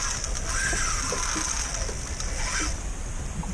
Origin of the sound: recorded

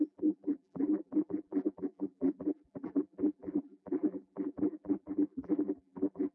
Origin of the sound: remade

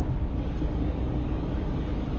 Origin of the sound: remade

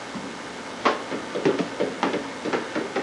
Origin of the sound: recorded